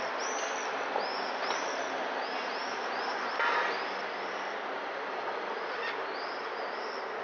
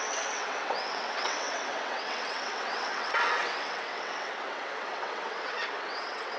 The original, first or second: first